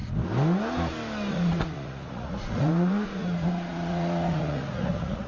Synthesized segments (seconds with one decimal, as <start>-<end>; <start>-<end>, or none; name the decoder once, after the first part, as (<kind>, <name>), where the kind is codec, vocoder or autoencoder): 1.3-5.3 (vocoder, Vocos)